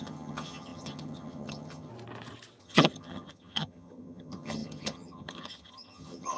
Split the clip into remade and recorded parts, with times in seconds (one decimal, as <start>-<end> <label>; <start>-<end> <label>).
0.0-1.9 remade; 1.9-2.6 recorded; 2.6-6.4 remade